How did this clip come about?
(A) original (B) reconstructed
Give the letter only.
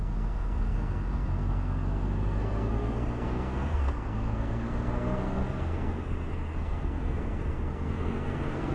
B